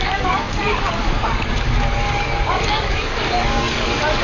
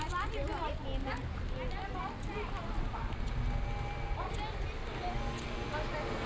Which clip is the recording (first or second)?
second